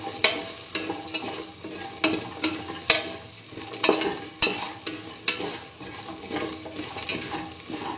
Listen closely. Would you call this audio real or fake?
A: real